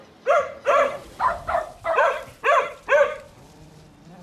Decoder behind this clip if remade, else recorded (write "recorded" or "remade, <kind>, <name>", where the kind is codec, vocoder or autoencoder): recorded